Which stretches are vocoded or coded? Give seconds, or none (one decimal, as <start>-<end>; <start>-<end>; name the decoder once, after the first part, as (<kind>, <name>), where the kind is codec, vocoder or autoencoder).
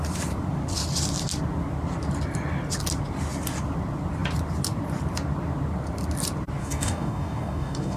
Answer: 6.6-8.0 (codec, DAC)